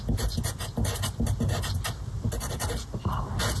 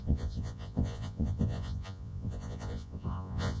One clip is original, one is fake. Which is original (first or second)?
first